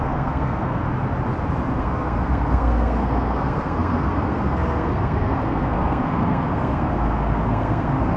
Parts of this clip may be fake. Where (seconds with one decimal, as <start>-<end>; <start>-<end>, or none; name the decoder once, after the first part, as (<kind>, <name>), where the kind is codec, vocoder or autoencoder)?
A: 0.0-0.8 (codec, SNAC); 1.8-8.2